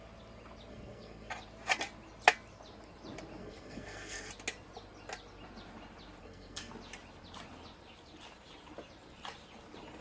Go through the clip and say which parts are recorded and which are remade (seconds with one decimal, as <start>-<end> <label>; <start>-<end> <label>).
0.0-0.7 recorded; 0.7-1.3 remade; 1.3-3.4 recorded; 3.4-4.3 remade; 4.3-6.2 recorded; 6.2-6.7 remade; 6.7-10.0 recorded